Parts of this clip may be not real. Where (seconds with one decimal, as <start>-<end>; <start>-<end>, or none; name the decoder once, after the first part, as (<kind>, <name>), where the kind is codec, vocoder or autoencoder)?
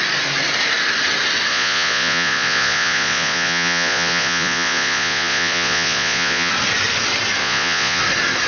1.5-6.5 (vocoder, Vocos); 7.4-8.0